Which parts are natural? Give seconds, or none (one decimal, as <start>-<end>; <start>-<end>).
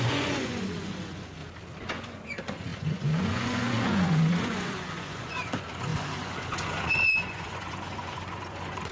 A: 1.4-1.9